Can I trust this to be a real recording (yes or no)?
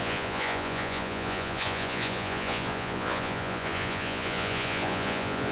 no